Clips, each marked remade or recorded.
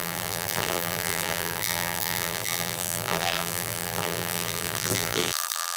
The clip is remade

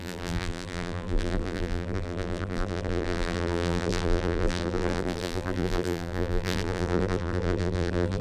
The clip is remade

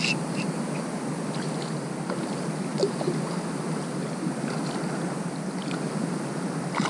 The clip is recorded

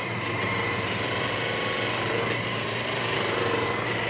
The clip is remade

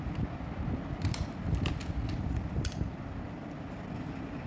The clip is remade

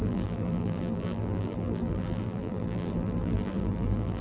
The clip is remade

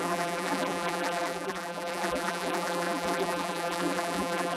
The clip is remade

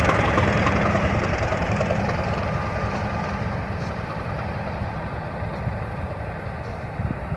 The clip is remade